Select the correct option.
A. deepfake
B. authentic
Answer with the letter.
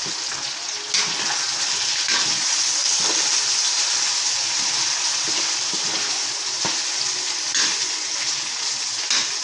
B